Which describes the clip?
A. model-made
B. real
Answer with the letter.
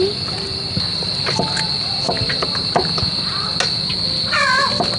B